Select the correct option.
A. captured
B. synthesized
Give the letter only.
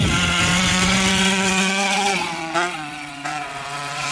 B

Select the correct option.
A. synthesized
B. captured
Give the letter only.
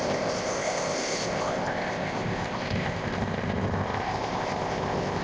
A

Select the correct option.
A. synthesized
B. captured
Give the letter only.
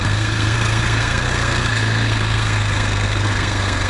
A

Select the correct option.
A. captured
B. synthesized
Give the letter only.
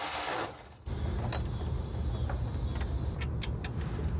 A